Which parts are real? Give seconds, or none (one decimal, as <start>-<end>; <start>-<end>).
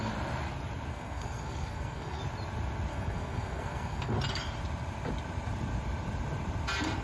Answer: 0.0-0.9; 2.2-2.9; 4.1-7.0